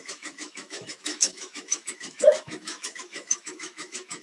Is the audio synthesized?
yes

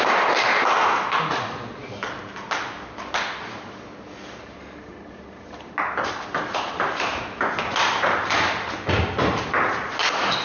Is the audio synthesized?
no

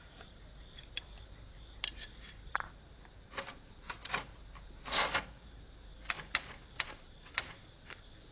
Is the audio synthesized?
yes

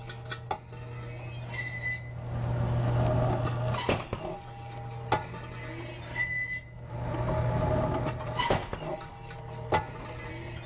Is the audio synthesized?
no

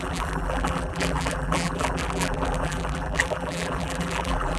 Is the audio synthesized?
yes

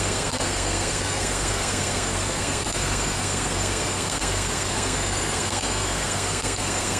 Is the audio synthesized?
yes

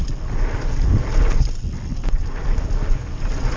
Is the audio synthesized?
no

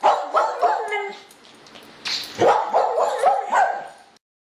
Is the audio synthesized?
no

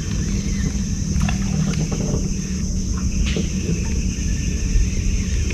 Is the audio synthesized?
no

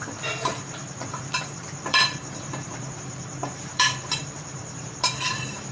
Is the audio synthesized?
yes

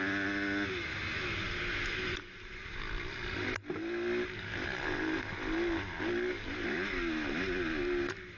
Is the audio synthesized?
no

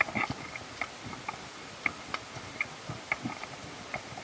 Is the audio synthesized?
no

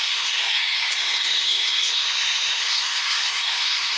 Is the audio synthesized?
yes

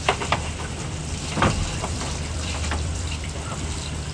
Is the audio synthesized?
yes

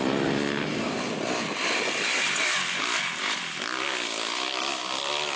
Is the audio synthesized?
no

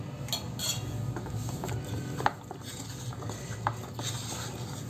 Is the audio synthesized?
no